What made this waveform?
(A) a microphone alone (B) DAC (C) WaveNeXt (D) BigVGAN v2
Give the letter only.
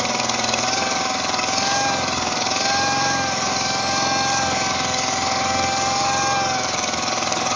B